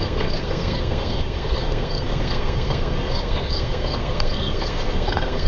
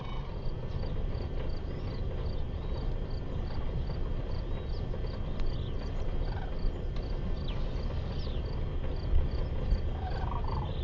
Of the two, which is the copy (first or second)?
first